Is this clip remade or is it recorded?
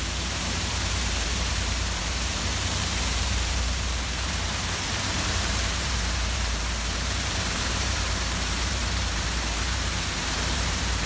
remade